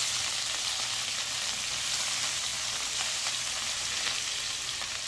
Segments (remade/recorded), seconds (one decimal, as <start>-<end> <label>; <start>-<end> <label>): 0.0-1.9 remade; 1.9-2.5 recorded; 2.5-4.2 remade; 4.2-5.1 recorded